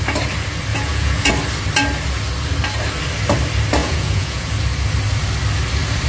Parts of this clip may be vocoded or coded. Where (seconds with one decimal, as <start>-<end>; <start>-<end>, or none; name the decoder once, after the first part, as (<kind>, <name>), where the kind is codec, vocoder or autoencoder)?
0.7-1.3 (vocoder, Vocos); 3.8-4.5